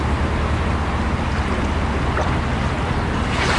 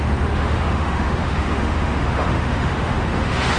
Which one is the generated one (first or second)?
second